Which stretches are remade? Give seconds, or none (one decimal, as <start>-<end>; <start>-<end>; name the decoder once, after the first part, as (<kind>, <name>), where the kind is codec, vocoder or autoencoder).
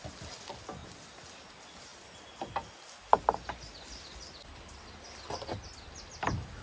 none